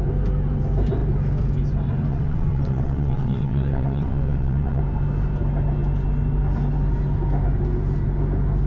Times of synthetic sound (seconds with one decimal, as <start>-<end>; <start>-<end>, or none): 2.1-4.8